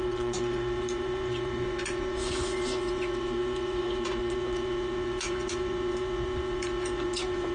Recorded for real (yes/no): no